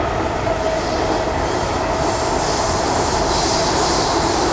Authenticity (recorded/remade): recorded